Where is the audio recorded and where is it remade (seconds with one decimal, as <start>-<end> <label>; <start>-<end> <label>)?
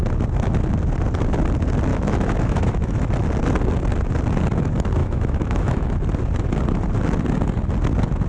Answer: 0.0-1.9 recorded; 1.9-3.1 remade; 3.1-5.0 recorded; 5.0-5.9 remade; 5.9-8.3 recorded